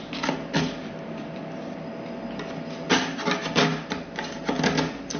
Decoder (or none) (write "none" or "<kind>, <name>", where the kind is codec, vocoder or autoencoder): none